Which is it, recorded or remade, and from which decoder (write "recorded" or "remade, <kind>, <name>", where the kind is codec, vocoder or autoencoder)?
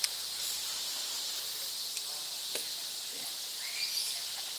recorded